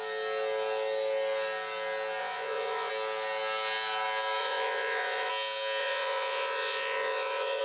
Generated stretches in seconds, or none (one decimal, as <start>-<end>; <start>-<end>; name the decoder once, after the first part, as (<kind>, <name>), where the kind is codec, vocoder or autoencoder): 2.2-2.9 (vocoder, Vocos); 4.4-5.3; 5.8-7.6